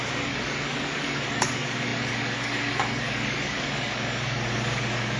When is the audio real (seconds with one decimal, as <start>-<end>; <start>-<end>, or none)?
none